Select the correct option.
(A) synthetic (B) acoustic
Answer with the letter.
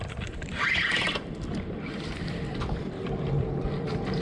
A